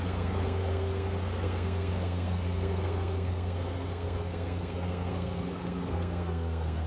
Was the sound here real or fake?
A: fake